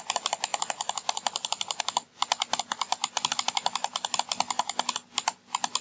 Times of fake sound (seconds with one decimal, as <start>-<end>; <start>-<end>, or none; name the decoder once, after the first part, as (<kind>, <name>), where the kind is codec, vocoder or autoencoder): none